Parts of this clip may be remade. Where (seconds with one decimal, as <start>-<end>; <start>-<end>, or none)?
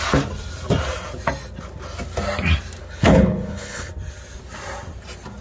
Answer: 2.8-3.9